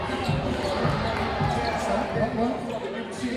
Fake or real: real